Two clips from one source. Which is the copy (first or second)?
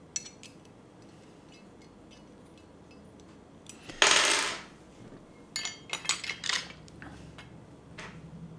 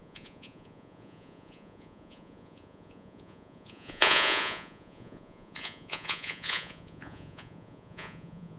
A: second